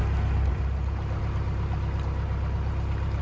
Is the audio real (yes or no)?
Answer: yes